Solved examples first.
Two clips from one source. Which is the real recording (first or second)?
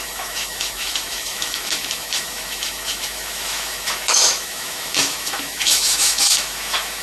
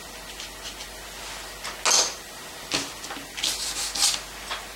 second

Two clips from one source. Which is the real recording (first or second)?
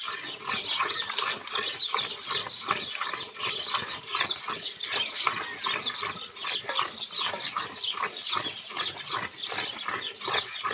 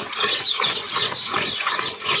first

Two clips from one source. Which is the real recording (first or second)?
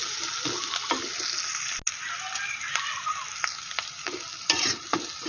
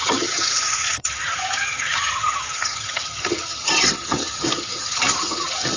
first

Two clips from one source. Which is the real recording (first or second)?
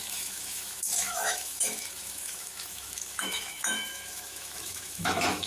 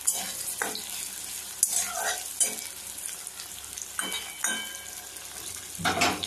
second